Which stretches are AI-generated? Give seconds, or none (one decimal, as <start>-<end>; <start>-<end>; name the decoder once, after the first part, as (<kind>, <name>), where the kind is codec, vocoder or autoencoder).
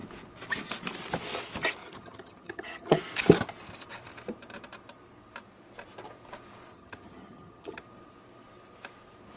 1.8-3.0 (vocoder, HiFi-GAN); 6.7-7.8